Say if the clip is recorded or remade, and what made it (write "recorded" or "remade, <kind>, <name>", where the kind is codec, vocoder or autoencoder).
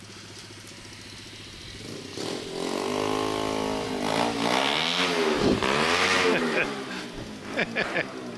recorded